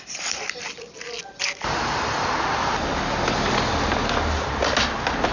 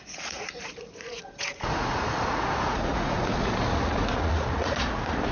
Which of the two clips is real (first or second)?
first